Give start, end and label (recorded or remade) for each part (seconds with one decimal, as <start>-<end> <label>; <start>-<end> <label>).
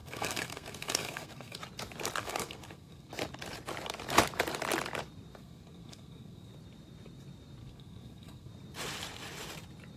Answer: 0.0-1.6 remade; 1.6-2.2 recorded; 2.2-3.1 remade; 3.1-5.4 recorded; 5.4-6.5 remade; 6.5-7.6 recorded; 7.6-8.5 remade; 8.5-10.0 recorded